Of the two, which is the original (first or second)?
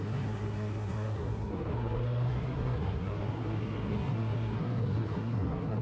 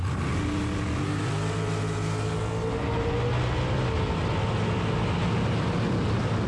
second